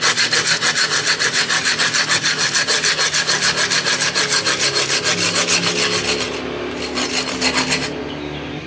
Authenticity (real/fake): real